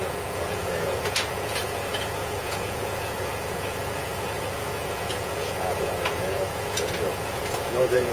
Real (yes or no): no